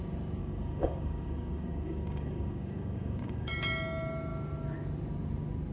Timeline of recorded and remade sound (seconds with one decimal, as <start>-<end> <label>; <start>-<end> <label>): 0.0-0.4 recorded; 0.4-3.5 remade; 3.5-5.7 recorded